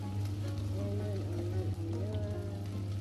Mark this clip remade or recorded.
recorded